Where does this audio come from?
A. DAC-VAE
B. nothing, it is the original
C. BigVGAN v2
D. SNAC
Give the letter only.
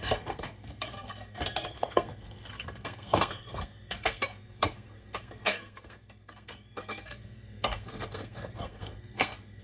D